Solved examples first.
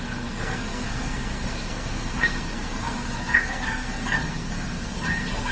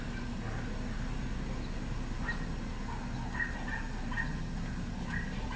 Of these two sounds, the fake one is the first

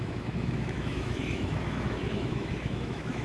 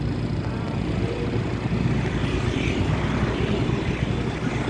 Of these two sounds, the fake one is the first